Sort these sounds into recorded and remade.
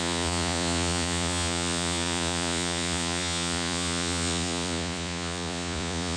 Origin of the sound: remade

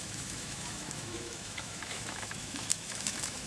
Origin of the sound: remade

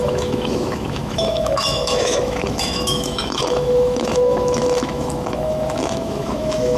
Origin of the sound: remade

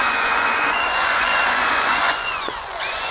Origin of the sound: remade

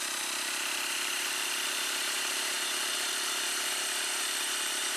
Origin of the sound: remade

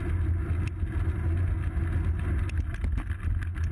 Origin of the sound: recorded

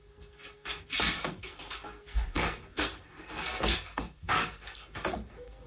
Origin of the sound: remade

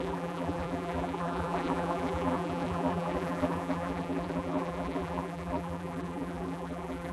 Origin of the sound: remade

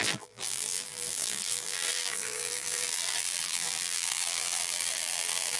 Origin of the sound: remade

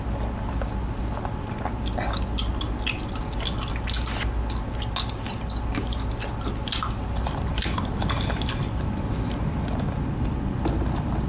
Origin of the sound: recorded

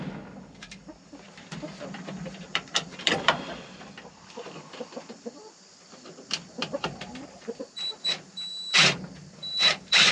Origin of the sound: remade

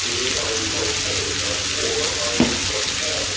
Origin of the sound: recorded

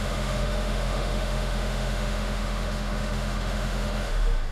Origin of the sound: remade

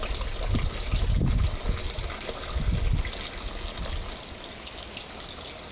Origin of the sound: recorded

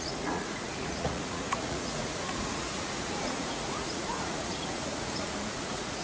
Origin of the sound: remade